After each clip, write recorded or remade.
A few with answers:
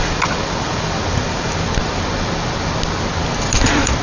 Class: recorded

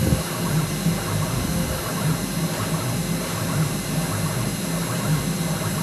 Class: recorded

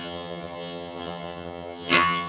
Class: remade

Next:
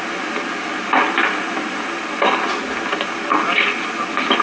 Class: recorded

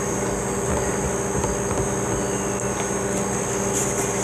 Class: recorded